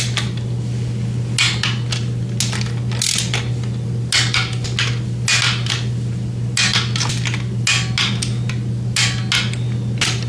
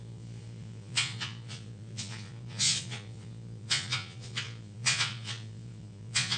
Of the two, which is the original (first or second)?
first